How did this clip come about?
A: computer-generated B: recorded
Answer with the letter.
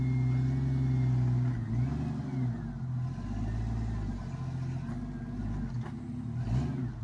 B